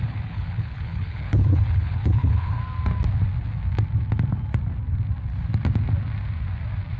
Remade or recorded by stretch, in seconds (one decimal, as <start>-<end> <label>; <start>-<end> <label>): 0.0-2.6 remade; 2.6-7.0 recorded